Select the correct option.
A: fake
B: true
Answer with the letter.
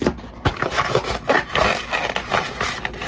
B